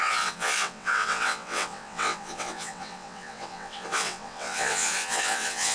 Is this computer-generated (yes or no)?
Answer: yes